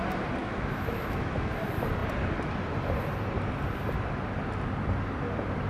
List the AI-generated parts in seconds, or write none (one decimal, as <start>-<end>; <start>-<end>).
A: 0.4-1.5